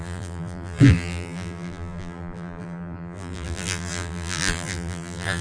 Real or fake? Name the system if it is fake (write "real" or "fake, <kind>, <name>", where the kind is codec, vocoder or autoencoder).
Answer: fake, vocoder, BigVGAN v2